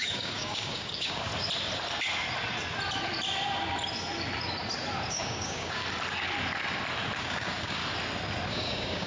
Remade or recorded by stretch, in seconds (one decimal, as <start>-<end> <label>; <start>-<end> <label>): 0.0-1.3 remade; 1.3-5.1 recorded; 5.1-5.8 remade; 5.8-7.2 recorded; 7.2-7.8 remade; 7.8-8.5 recorded; 8.5-9.1 remade

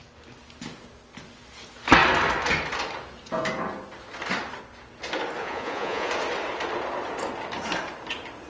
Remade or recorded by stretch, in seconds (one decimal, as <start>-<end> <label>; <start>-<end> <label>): 0.0-5.4 recorded; 5.4-6.1 remade; 6.1-8.5 recorded

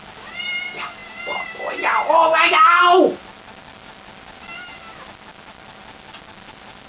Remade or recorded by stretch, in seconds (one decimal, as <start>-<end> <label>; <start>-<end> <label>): 0.0-6.9 recorded

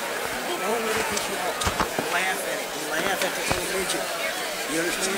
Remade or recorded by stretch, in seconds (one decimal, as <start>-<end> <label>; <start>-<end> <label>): 0.0-0.7 recorded; 0.7-2.6 remade; 2.6-5.2 recorded

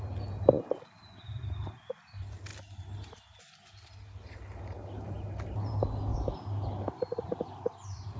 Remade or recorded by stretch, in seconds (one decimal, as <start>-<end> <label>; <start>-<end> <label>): 0.0-6.1 recorded; 6.1-6.6 remade; 6.6-8.2 recorded